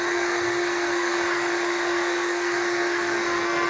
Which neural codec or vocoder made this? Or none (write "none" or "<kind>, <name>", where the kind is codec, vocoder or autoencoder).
codec, SNAC